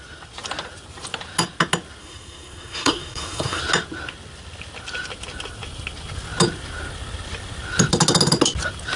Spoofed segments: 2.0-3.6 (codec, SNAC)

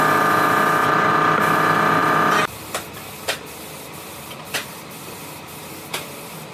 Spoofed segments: 0.8-1.4 (vocoder, BigVGAN v2)

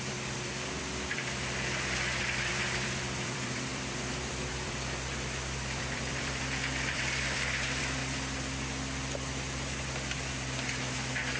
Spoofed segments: 0.0-1.2 (vocoder, BigVGAN v2); 2.5-8.0

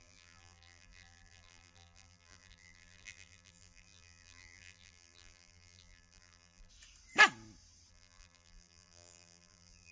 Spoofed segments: 0.0-6.7 (vocoder, BigVGAN v2); 7.9-9.9

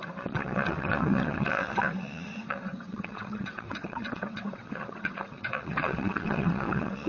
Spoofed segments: 0.0-7.1 (vocoder, WaveNeXt)